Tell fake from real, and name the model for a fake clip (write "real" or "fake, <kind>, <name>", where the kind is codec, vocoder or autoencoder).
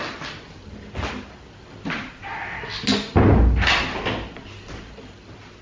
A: real